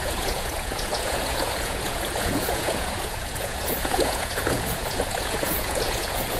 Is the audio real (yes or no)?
no